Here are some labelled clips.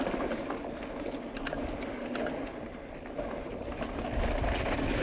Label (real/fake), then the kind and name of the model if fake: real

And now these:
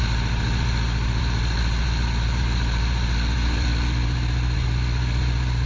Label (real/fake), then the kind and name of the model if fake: real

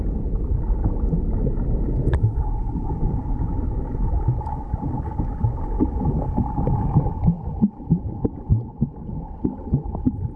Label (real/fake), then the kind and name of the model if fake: real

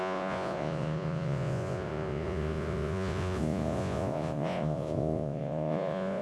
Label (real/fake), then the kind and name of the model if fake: fake, vocoder, Vocos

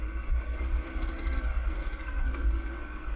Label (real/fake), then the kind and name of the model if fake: fake, codec, SNAC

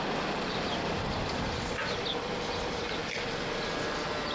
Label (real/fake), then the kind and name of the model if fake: real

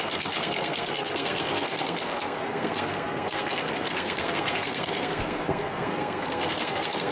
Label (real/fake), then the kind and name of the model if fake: fake, codec, SNAC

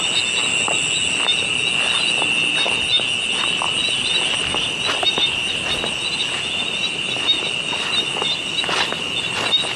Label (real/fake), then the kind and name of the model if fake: real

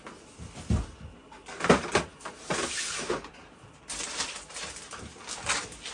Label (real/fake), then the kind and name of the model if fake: real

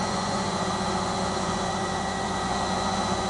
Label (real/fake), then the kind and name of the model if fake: fake, vocoder, Vocos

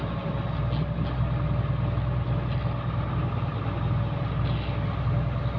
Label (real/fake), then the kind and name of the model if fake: real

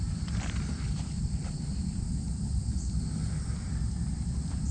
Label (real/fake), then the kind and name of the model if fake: real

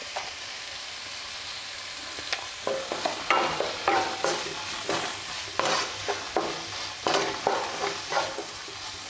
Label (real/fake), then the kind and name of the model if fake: real